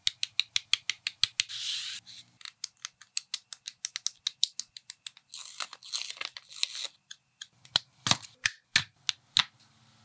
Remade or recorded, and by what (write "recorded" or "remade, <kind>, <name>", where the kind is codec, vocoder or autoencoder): recorded